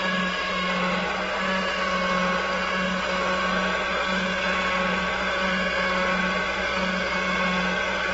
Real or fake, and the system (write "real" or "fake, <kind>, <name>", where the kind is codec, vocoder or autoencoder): real